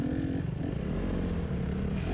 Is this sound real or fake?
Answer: real